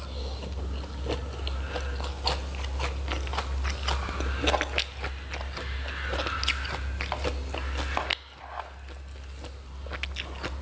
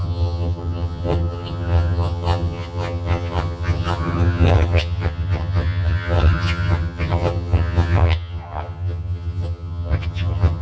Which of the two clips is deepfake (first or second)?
second